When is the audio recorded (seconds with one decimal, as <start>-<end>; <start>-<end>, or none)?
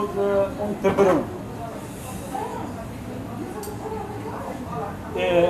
0.0-5.5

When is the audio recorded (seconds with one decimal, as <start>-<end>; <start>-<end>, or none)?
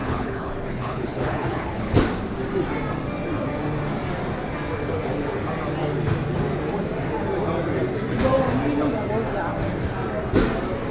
2.0-10.9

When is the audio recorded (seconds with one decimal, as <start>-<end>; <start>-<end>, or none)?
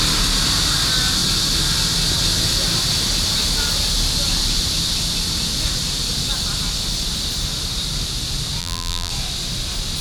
0.0-8.6; 9.1-10.0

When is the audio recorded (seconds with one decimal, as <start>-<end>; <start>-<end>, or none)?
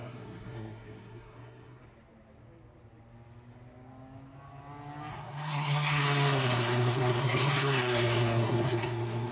1.8-5.1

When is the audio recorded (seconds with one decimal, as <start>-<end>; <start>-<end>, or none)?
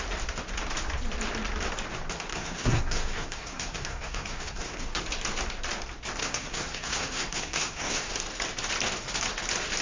0.0-2.3; 5.0-6.2; 8.1-9.8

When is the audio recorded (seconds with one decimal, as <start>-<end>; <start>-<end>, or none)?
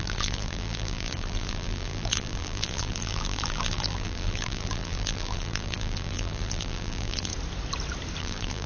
7.3-8.2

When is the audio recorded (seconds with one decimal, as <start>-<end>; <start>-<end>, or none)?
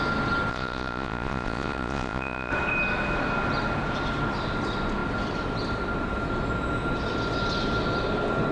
0.0-0.5; 2.5-8.5